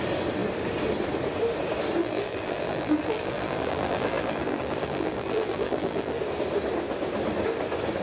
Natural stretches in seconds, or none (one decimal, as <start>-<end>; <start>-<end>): 0.0-2.0; 6.2-8.0